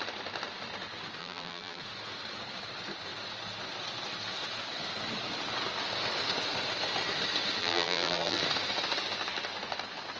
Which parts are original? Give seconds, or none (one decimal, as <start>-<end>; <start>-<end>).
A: 0.0-1.2; 1.8-7.6; 8.4-10.2